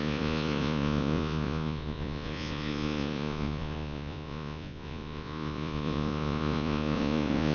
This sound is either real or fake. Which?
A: fake